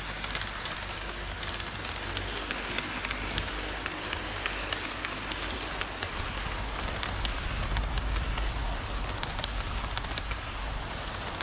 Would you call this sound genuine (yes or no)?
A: yes